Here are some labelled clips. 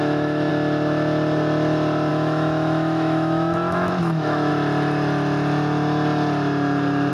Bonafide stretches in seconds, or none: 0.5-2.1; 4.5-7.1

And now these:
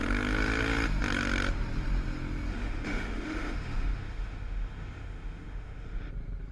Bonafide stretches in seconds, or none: 0.0-2.5; 6.1-6.5

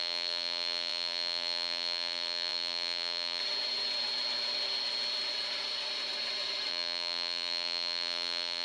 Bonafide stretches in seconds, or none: 3.4-6.7

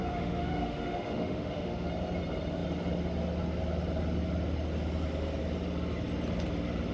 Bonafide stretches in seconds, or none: 1.9-6.9